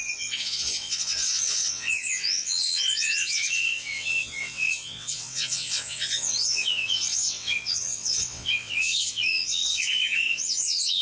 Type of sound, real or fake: fake